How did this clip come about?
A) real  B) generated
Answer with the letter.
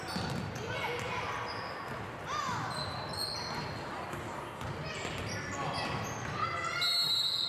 A